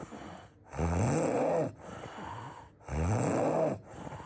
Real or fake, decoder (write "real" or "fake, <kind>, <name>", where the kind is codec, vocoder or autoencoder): real